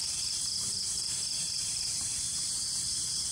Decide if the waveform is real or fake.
fake